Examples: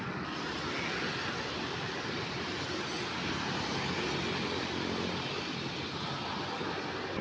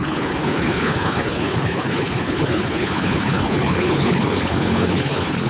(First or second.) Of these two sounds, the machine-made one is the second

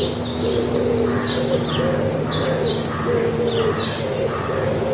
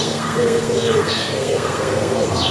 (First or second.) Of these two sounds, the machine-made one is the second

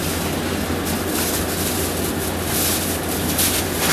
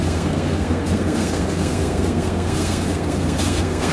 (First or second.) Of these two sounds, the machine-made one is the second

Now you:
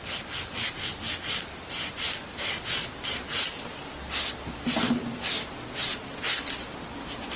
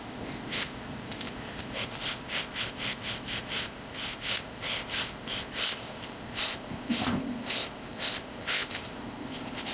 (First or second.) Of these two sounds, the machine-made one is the second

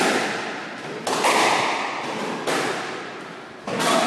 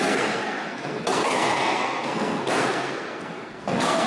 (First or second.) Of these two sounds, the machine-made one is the second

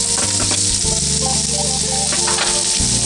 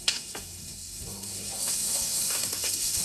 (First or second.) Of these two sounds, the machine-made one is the second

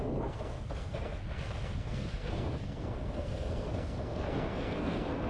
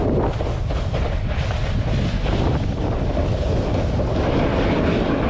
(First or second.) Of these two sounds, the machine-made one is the first